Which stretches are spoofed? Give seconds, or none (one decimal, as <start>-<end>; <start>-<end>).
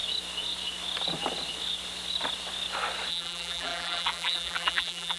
3.1-5.2